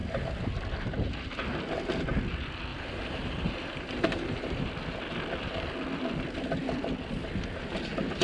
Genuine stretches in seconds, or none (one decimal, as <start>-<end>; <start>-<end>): 0.0-2.7; 4.7-8.2